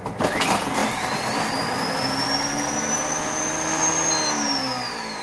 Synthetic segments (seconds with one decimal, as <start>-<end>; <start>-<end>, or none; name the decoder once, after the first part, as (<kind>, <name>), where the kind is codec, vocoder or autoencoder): none